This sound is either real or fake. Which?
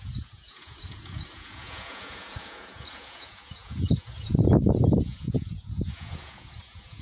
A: fake